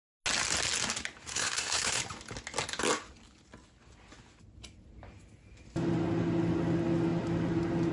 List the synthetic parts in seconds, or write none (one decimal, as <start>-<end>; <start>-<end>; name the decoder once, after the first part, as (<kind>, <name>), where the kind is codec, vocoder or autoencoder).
1.3-2.0 (codec, SNAC)